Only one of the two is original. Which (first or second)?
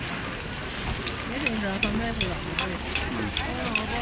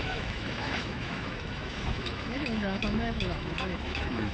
first